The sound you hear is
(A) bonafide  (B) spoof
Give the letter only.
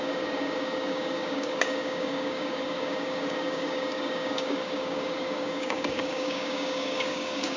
B